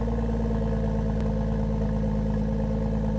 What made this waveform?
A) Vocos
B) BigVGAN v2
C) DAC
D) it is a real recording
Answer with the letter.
D